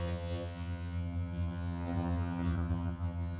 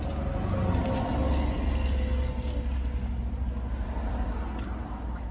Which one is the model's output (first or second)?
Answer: first